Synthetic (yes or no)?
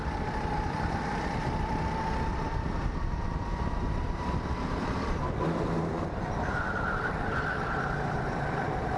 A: yes